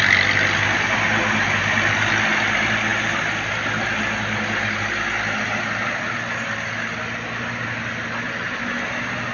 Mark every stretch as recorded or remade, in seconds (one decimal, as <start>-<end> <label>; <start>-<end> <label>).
0.0-9.3 recorded